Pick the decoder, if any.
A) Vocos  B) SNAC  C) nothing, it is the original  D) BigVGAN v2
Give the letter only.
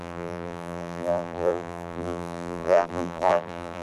D